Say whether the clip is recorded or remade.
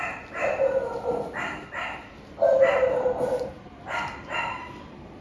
recorded